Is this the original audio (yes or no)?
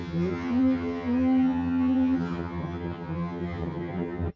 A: no